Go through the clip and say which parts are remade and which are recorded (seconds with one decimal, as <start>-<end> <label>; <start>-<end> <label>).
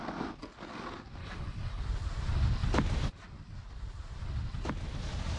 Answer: 0.0-1.2 recorded; 1.2-1.8 remade; 1.8-5.4 recorded